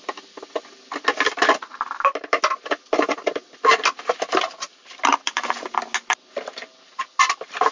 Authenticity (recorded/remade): recorded